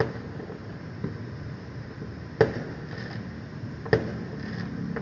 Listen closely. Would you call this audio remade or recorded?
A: recorded